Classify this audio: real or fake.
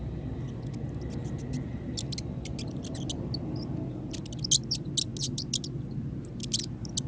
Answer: real